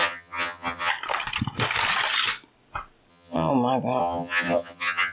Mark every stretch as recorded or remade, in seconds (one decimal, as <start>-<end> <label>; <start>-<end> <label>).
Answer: 0.0-0.9 remade; 0.9-3.1 recorded; 3.1-3.5 remade; 3.5-4.0 recorded; 4.0-5.1 remade